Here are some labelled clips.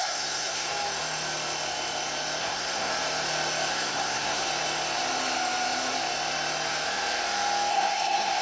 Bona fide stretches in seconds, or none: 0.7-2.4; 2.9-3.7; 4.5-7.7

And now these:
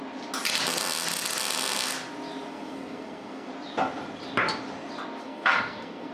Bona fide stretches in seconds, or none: 0.0-2.5; 3.5-5.2

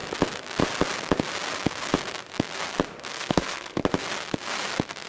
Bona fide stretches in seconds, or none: 0.0-3.1; 3.8-5.1

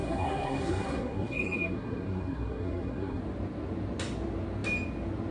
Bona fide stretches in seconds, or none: 3.2-5.3